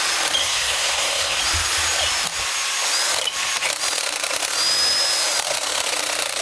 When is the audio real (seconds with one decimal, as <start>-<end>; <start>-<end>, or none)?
0.0-0.4; 1.4-6.4